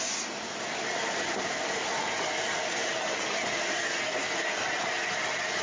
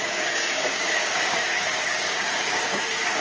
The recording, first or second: first